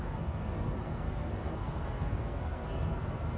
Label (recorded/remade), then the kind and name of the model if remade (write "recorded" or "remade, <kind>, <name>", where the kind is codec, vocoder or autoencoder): remade, codec, SNAC